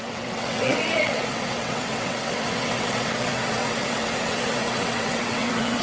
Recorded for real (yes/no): no